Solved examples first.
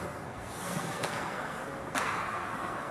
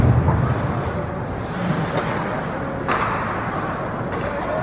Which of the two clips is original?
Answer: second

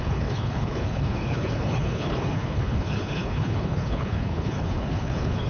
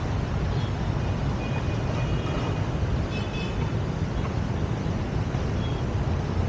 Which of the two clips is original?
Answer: second